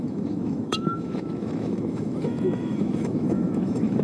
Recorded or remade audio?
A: remade